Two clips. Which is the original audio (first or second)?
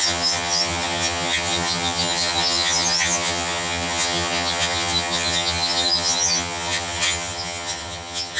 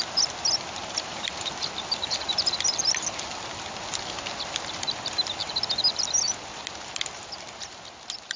second